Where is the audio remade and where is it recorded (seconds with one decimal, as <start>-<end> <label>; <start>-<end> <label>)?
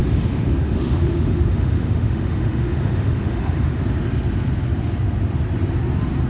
0.0-3.8 remade; 3.8-6.3 recorded